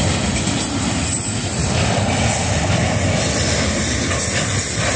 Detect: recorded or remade recorded